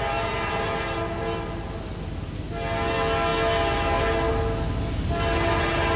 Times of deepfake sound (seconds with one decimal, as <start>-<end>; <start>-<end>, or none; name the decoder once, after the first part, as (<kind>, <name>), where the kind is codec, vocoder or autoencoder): none